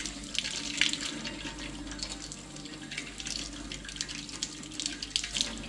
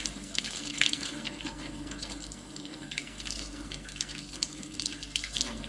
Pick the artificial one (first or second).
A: second